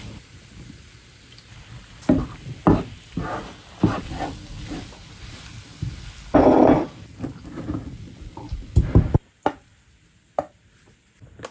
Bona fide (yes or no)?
yes